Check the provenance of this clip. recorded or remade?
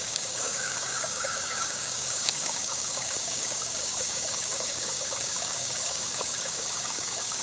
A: remade